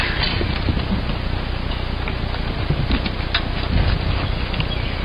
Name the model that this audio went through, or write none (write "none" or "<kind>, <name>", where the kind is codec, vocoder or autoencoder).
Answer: none